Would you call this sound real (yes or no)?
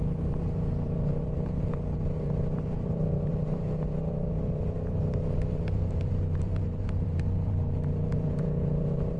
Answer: no